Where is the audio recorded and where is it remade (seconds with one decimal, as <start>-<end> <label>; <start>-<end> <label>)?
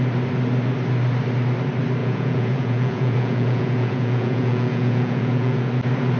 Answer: 0.0-2.0 recorded; 2.0-5.7 remade; 5.7-6.2 recorded